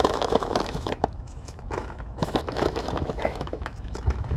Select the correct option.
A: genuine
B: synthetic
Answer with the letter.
B